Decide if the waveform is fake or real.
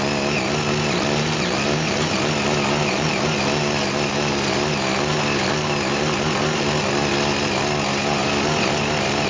real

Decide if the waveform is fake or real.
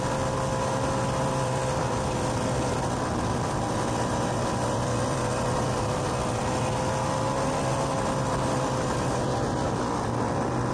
real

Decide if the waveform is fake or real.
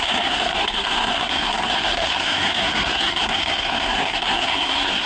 fake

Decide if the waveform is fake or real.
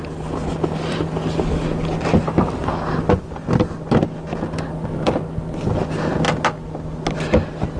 real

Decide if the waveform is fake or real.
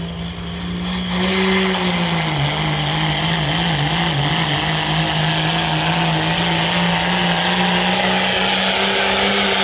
real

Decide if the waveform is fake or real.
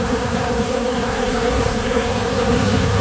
fake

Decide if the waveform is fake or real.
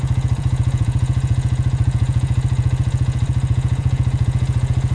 fake